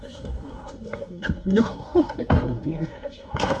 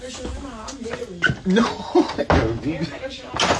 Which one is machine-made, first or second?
first